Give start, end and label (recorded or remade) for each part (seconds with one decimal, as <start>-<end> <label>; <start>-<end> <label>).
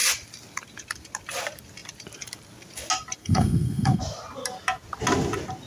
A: 0.0-3.2 recorded; 3.2-4.0 remade; 4.0-5.7 recorded